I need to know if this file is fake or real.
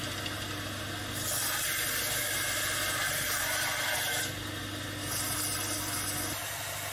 real